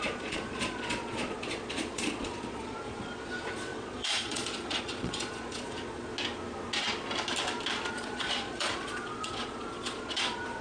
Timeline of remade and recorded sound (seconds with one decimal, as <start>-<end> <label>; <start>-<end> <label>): 0.0-6.1 remade; 6.1-7.9 recorded; 7.9-10.6 remade